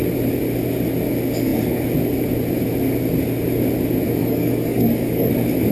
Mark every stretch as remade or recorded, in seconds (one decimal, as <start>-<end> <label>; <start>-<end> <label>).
0.0-4.2 recorded; 4.2-5.3 remade; 5.3-5.7 recorded